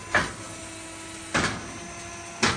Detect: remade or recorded recorded